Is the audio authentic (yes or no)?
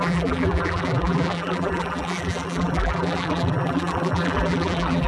no